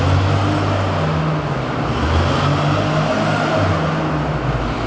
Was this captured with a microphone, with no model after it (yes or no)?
yes